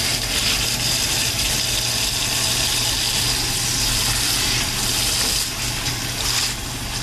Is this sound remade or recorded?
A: recorded